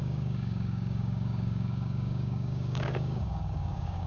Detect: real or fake fake